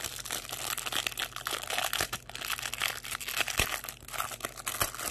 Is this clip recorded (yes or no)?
yes